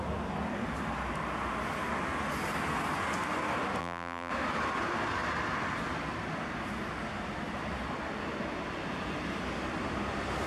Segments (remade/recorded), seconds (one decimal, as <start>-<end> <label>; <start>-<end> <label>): 0.0-3.8 recorded; 3.8-4.3 remade; 4.3-10.5 recorded